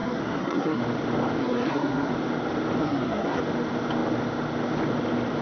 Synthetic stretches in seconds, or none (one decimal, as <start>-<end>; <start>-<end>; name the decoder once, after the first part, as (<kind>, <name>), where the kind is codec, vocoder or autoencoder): 0.0-0.8 (codec, SNAC); 1.4-2.1; 2.8-3.4